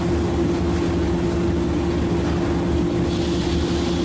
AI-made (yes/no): no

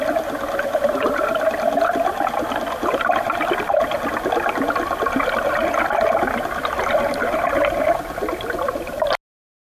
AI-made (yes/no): no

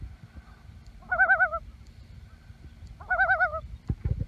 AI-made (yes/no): no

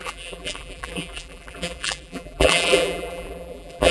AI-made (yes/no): yes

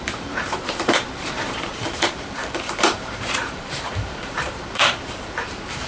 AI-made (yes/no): yes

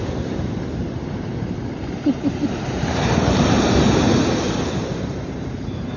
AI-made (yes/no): yes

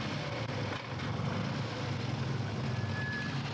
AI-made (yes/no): no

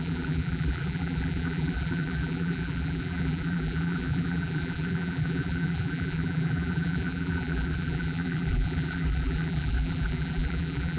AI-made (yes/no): yes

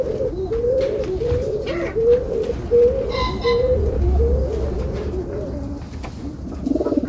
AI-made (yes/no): no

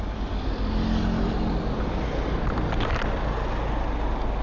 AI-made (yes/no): no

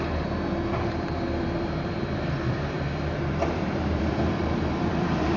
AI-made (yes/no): yes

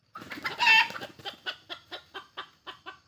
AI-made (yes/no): no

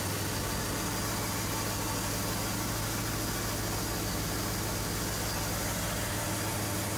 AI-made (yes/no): no